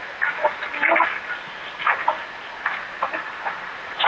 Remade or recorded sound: remade